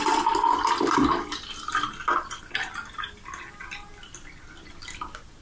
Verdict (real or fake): real